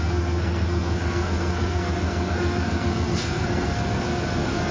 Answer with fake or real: fake